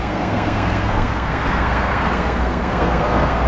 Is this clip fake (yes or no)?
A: yes